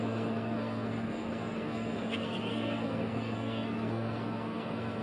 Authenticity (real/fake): fake